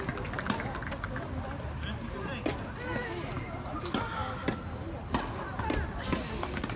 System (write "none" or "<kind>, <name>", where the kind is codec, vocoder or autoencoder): none